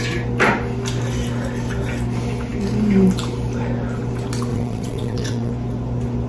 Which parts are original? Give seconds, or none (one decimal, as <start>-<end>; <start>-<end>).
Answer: 0.0-4.5; 5.5-6.3